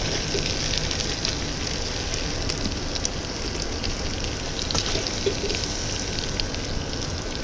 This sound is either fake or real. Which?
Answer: real